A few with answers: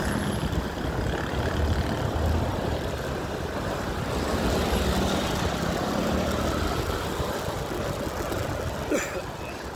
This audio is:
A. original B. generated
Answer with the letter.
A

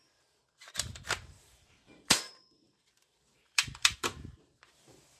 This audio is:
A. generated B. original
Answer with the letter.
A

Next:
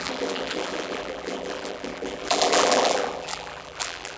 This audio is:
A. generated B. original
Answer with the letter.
A